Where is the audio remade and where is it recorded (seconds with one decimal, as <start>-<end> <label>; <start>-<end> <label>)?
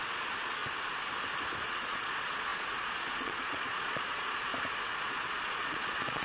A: 0.0-0.6 remade; 0.6-1.6 recorded; 1.6-4.5 remade; 4.5-5.0 recorded; 5.0-6.2 remade